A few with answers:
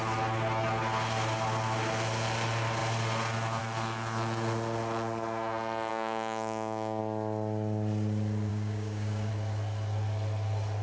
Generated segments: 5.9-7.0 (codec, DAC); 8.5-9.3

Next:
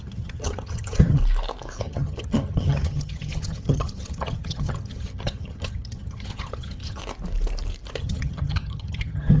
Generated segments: 0.0-1.2 (vocoder, HiFi-GAN); 1.8-7.0; 8.0-9.4

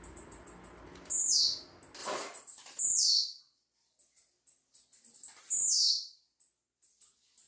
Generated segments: 2.0-2.8 (vocoder, BigVGAN v2)

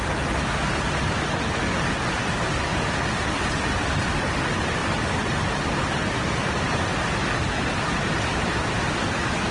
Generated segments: none